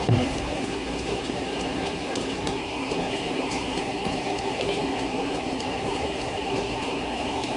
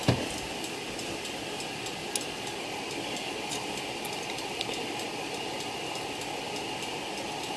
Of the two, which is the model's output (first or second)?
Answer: first